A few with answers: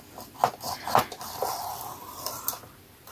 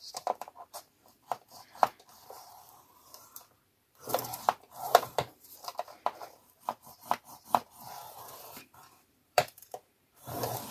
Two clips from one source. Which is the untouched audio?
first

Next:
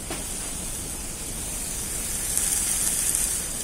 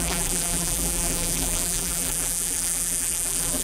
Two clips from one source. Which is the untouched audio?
first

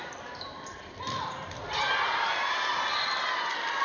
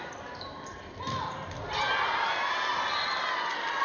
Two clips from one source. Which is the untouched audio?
second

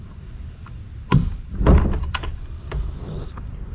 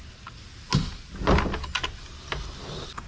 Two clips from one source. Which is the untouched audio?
second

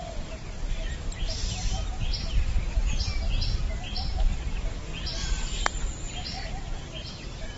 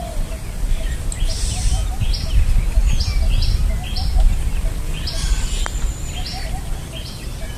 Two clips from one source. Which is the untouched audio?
second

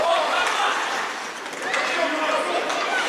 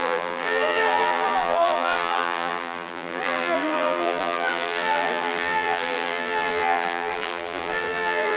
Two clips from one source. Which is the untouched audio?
first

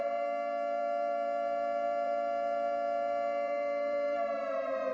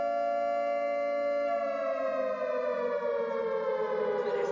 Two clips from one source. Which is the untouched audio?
second